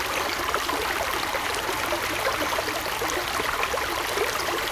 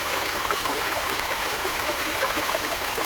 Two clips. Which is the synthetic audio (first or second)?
second